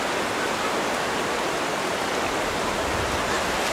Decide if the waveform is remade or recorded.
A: recorded